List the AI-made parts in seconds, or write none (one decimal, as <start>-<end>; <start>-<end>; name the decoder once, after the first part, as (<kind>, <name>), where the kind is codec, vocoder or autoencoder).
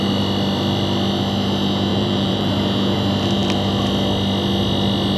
1.9-2.5 (vocoder, BigVGAN v2)